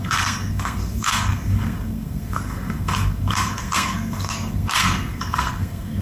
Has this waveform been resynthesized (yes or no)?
yes